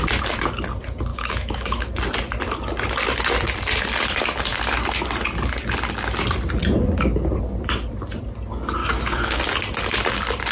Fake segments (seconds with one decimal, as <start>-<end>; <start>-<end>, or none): 1.1-1.9; 8.8-9.4